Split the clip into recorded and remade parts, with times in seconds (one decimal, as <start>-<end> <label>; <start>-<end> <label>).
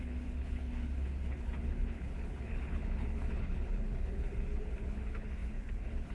0.0-6.1 remade